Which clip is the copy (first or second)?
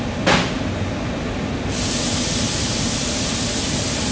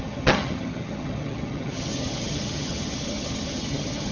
second